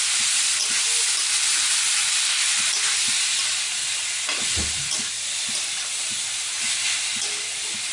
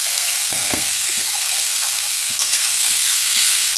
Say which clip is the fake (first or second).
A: second